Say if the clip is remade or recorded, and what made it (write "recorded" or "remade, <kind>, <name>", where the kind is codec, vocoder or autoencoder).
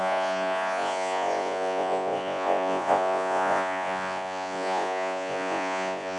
remade, vocoder, Vocos